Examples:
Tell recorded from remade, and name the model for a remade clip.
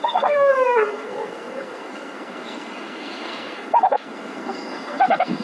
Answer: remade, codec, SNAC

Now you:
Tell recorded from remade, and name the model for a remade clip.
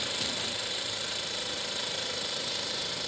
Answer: remade, vocoder, BigVGAN v2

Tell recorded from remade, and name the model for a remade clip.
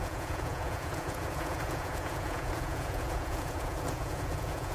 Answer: remade, vocoder, Vocos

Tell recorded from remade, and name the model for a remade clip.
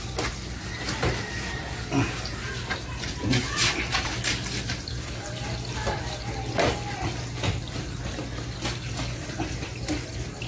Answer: recorded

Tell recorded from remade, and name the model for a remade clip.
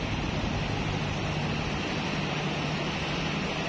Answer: recorded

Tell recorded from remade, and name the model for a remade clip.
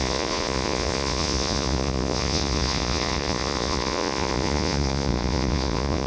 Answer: remade, vocoder, Vocos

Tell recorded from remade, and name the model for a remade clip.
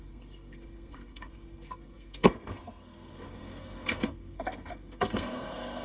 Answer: remade, codec, SNAC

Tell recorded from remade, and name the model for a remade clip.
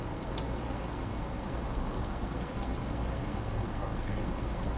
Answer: remade, codec, SNAC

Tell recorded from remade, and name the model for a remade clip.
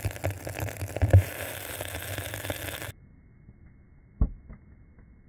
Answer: recorded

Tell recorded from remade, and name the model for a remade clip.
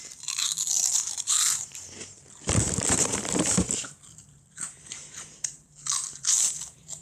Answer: remade, vocoder, BigVGAN v2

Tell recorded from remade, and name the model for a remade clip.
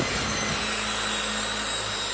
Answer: recorded